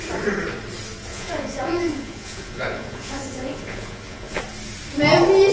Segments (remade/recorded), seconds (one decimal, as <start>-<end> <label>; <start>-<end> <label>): 0.0-1.1 recorded; 1.1-4.4 remade; 4.4-5.5 recorded